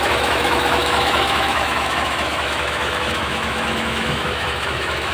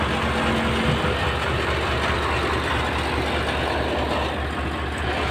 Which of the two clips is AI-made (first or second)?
first